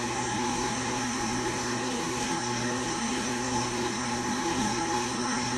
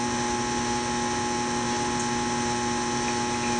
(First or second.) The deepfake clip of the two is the first